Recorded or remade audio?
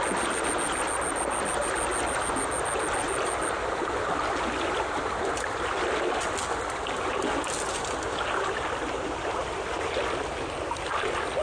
recorded